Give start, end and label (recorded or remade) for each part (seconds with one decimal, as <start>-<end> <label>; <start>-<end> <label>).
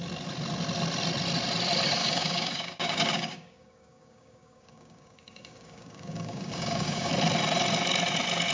0.0-2.0 recorded; 2.0-7.1 remade; 7.1-8.5 recorded